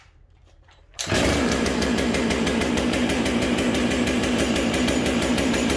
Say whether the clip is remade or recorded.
remade